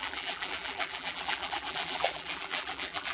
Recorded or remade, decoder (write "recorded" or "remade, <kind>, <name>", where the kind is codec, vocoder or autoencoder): remade, vocoder, BigVGAN v2